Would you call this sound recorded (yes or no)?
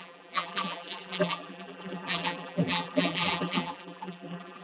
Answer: no